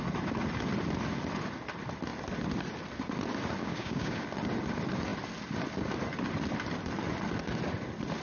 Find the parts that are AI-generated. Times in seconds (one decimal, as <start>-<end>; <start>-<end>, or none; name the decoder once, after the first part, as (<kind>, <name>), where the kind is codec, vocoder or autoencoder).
3.6-4.3 (codec, DAC)